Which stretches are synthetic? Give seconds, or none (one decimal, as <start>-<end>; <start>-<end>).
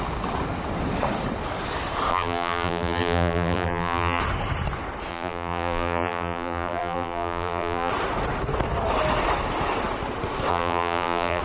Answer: 2.1-4.2; 5.1-7.9; 10.5-11.4